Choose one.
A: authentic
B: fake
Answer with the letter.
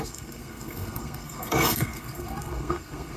B